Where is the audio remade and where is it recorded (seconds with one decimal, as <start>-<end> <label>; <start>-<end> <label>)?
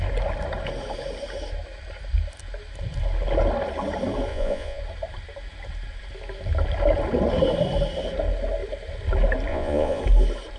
0.0-4.3 recorded; 4.3-4.8 remade; 4.8-9.5 recorded; 9.5-10.0 remade; 10.0-10.6 recorded